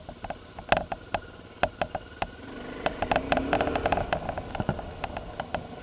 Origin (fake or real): real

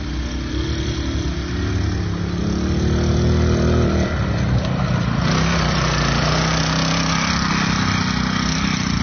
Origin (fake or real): real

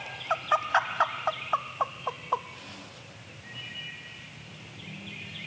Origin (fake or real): real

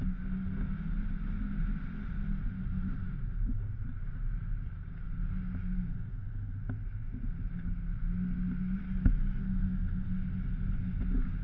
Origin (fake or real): real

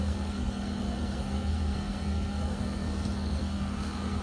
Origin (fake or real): fake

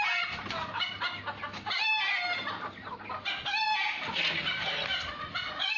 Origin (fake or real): real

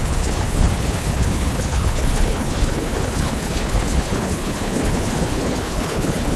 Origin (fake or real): fake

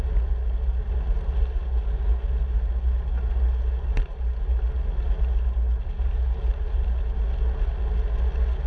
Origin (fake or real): real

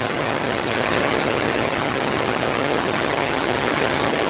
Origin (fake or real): fake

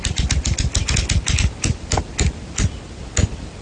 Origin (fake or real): real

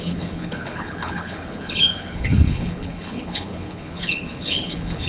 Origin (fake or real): fake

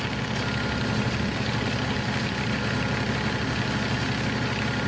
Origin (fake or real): real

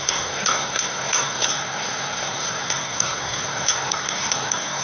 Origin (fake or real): fake